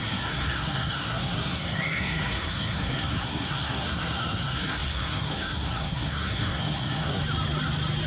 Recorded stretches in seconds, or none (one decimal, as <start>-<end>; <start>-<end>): 7.2-8.1